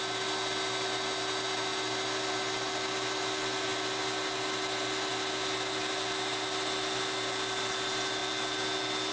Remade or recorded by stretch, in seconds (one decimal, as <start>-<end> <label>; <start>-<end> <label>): 0.0-9.1 recorded